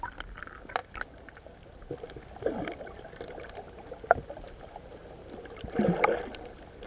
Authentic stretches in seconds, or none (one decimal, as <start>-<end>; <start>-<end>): 0.0-6.9